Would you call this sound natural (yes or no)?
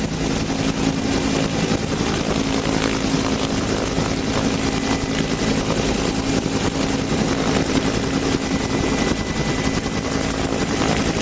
yes